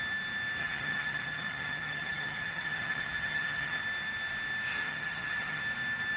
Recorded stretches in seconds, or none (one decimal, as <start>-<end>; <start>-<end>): 0.0-0.6; 3.8-4.7; 5.6-6.2